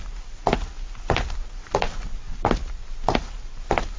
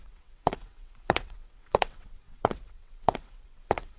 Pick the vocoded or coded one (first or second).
second